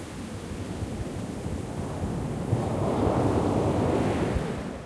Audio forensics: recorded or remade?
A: recorded